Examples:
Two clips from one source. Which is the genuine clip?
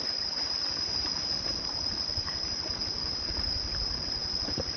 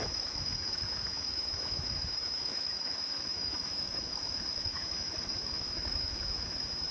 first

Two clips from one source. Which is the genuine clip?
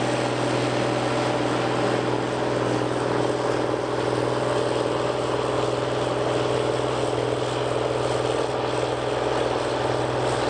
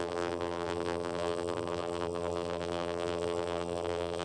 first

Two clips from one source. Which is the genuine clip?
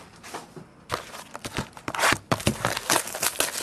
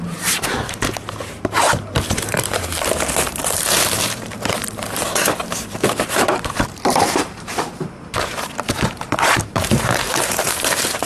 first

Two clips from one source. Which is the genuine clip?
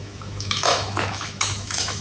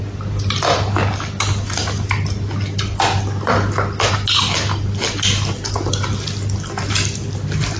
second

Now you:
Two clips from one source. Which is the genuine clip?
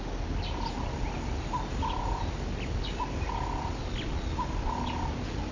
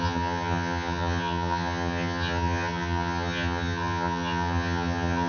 first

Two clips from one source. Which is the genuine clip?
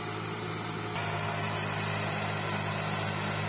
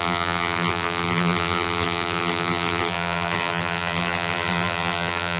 first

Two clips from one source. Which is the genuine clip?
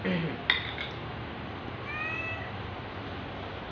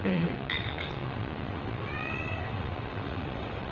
first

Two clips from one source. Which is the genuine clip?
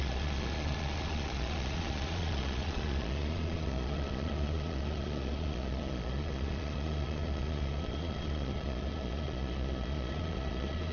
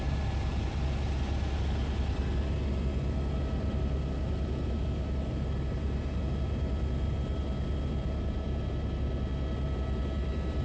second